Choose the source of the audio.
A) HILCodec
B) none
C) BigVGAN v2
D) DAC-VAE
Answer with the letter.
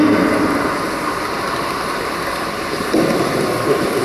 B